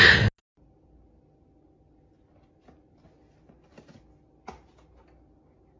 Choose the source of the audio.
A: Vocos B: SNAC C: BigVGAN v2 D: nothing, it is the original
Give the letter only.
D